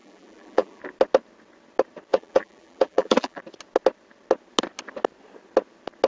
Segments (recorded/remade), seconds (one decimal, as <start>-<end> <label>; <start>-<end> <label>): 0.0-0.8 remade; 0.8-2.1 recorded; 2.1-3.4 remade; 3.4-6.1 recorded